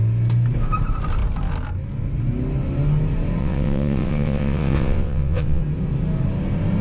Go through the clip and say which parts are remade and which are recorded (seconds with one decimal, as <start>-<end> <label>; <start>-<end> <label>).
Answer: 0.0-3.4 recorded; 3.4-5.6 remade; 5.6-6.8 recorded